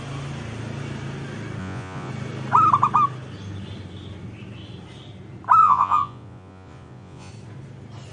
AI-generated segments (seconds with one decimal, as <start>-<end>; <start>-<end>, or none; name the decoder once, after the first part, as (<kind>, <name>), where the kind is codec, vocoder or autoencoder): 1.6-2.1 (vocoder, Vocos); 5.6-7.3